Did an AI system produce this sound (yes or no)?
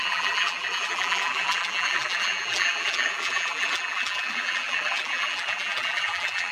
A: yes